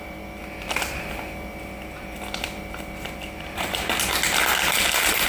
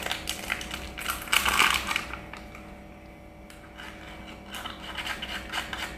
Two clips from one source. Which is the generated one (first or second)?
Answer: first